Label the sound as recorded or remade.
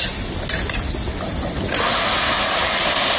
recorded